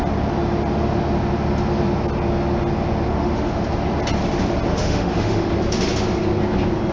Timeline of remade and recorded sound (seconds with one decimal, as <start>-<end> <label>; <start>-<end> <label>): 0.0-3.1 recorded; 3.1-3.6 remade; 3.6-4.7 recorded; 4.7-5.5 remade; 5.5-6.9 recorded